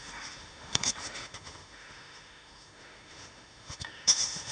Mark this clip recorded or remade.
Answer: remade